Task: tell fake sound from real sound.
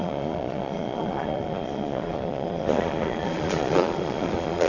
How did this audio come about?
fake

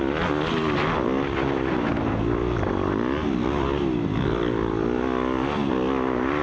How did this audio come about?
real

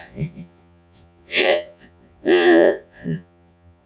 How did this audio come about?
fake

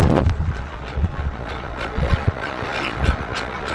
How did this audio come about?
fake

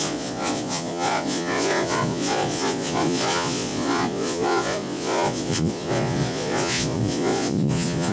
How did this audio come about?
fake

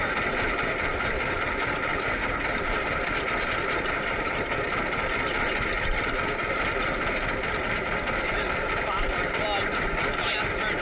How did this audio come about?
real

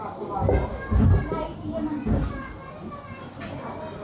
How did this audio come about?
real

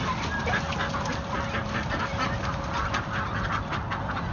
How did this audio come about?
real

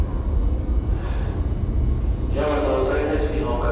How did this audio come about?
real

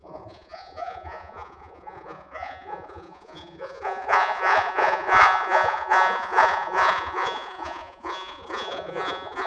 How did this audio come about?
fake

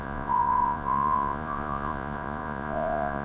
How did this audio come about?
fake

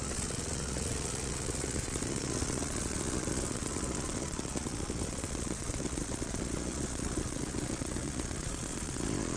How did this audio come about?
fake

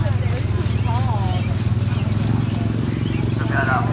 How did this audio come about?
real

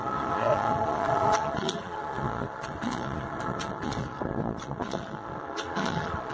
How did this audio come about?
fake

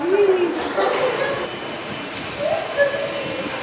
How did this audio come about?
real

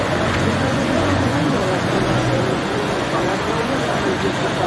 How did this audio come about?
fake